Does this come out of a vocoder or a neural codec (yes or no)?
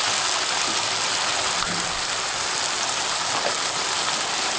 no